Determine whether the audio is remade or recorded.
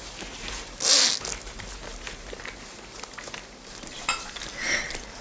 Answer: recorded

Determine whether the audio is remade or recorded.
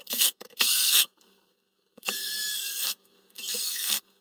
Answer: remade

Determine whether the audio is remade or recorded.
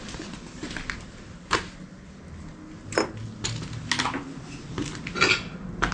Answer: recorded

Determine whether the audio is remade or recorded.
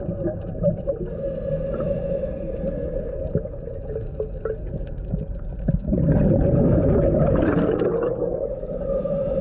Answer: recorded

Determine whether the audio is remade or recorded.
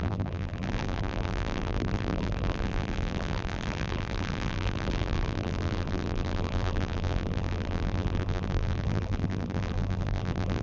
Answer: remade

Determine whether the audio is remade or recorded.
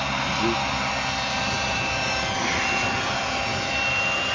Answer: recorded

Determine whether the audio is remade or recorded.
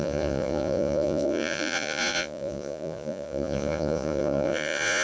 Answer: remade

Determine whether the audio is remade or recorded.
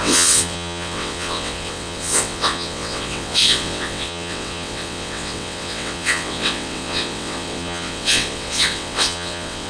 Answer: remade